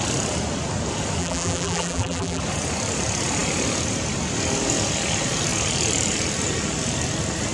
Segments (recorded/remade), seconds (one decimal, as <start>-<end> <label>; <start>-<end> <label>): 0.0-1.2 recorded; 1.2-2.4 remade; 2.4-7.5 recorded

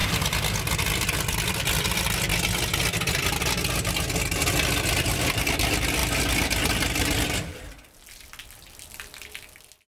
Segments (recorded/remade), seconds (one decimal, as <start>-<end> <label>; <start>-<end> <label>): 0.0-2.3 remade; 2.3-5.0 recorded; 5.0-6.0 remade; 6.0-8.5 recorded; 8.5-9.9 remade

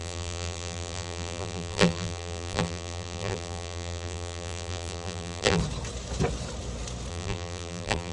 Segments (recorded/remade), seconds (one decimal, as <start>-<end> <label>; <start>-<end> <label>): 0.0-5.6 remade; 5.6-7.1 recorded; 7.1-8.1 remade

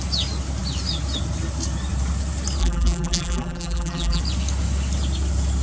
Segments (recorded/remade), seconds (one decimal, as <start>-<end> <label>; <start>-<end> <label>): 0.0-2.6 recorded; 2.6-4.2 remade; 4.2-5.6 recorded

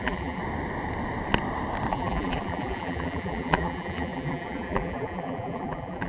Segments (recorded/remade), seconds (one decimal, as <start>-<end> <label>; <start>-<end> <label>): 0.0-0.4 remade; 0.4-1.9 recorded; 1.9-6.1 remade